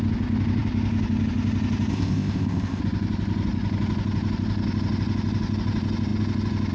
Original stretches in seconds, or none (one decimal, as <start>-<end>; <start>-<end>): 0.0-1.9; 2.8-6.7